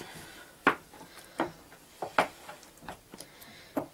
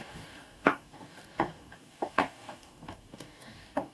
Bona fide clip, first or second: first